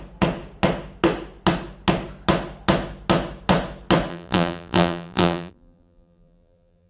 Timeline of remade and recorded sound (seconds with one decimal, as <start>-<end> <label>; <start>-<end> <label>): 0.0-4.1 recorded; 4.1-6.9 remade